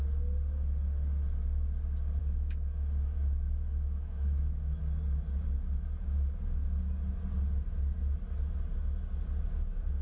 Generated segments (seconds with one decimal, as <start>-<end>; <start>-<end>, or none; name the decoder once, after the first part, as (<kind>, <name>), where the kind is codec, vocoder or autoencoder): 2.2-4.8 (autoencoder, DAC-VAE)